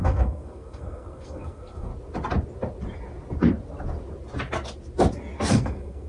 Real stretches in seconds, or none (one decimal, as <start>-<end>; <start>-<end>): 1.9-5.5